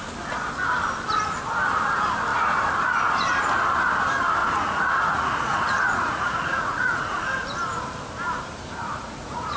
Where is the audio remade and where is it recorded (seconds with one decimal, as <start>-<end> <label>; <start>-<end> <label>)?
0.0-4.4 recorded; 4.4-7.2 remade; 7.2-8.9 recorded; 8.9-9.6 remade